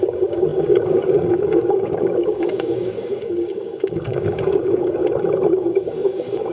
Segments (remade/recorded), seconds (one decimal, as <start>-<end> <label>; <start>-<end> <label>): 0.0-5.0 remade; 5.0-5.6 recorded; 5.6-6.5 remade